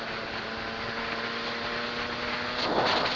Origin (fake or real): real